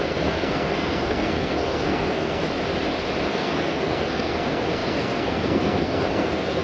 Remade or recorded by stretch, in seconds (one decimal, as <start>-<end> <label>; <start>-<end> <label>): 0.0-2.4 remade; 2.4-3.3 recorded; 3.3-6.6 remade